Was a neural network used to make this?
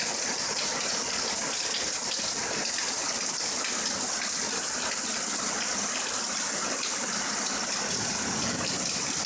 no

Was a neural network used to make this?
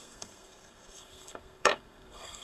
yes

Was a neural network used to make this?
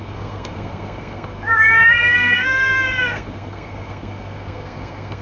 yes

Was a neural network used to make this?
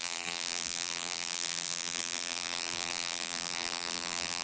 yes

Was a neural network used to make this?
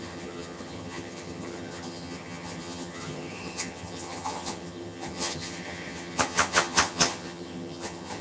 yes